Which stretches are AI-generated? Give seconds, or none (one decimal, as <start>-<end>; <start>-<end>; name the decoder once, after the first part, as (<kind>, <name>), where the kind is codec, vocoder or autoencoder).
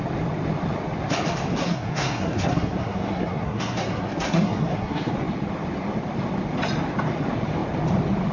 1.6-5.1 (codec, SNAC)